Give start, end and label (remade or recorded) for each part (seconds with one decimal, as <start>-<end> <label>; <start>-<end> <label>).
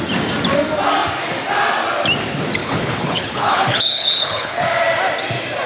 0.0-2.6 recorded; 2.6-4.6 remade; 4.6-5.7 recorded